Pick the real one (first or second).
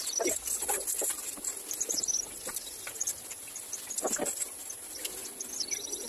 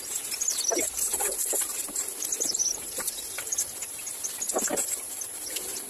first